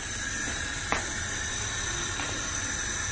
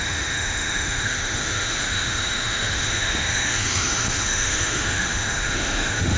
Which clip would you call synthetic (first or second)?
second